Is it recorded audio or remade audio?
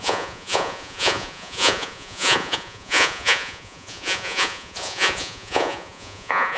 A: remade